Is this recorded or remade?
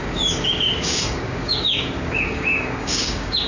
remade